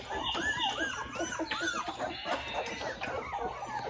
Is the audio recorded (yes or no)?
yes